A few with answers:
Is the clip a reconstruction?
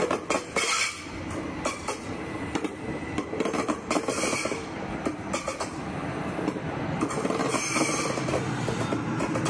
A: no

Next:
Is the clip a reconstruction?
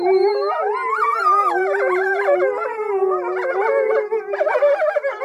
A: no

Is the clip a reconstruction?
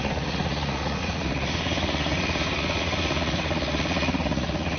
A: yes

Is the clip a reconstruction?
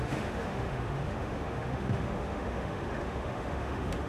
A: yes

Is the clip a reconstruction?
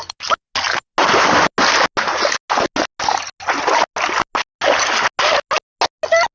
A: no